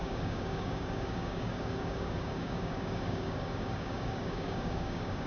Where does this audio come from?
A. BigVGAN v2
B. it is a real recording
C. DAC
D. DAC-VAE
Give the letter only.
C